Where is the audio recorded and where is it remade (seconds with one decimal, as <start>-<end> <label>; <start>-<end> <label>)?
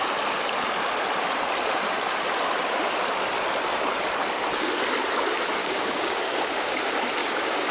0.0-5.6 recorded; 5.6-6.8 remade; 6.8-7.2 recorded; 7.2-7.7 remade